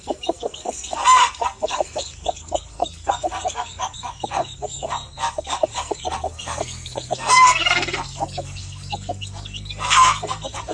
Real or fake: fake